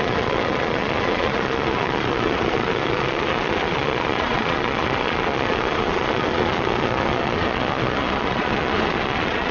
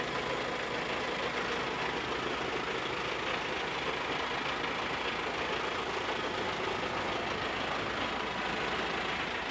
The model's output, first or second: first